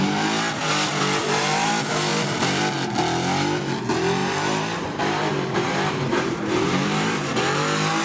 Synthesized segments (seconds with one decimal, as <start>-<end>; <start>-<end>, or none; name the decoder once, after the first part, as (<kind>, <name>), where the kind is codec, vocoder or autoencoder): 1.2-1.7 (vocoder, BigVGAN v2); 2.1-2.6; 4.2-7.4